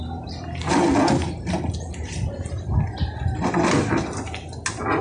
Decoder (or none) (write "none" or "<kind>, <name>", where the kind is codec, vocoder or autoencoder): none